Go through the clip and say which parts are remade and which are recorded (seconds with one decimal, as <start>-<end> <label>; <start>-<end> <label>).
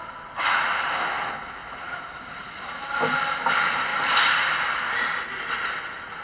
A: 0.0-3.9 recorded; 3.9-5.3 remade; 5.3-6.2 recorded